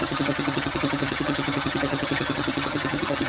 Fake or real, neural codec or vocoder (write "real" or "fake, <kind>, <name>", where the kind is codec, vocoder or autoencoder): fake, vocoder, HiFi-GAN